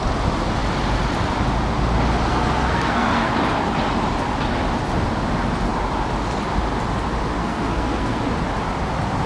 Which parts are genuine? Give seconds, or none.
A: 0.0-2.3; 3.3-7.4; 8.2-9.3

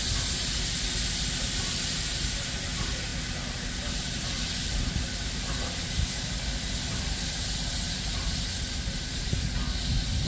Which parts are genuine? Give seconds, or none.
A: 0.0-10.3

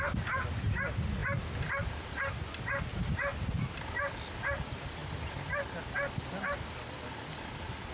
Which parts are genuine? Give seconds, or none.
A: 0.0-7.9

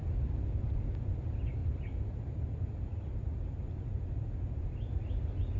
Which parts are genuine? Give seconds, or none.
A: 0.0-5.6